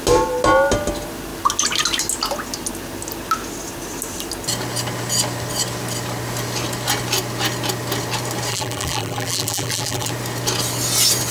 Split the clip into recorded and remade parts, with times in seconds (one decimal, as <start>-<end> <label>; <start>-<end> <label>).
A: 0.0-8.5 recorded; 8.5-10.1 remade; 10.1-11.3 recorded